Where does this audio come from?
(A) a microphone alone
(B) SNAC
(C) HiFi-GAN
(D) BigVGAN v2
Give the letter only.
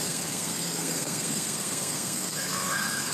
B